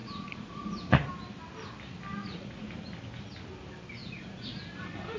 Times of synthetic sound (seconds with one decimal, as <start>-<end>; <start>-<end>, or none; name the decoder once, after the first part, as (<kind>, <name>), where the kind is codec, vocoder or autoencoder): 0.0-1.1 (vocoder, Vocos); 2.2-2.7; 4.0-4.6